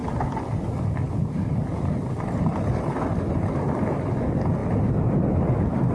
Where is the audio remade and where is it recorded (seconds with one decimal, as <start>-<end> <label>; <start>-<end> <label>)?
0.0-5.9 recorded